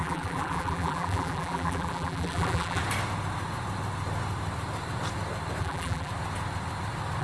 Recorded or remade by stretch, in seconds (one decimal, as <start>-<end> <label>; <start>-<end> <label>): 0.0-2.8 remade; 2.8-5.6 recorded; 5.6-6.1 remade; 6.1-7.2 recorded